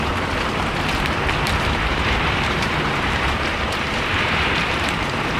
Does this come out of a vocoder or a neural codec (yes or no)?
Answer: yes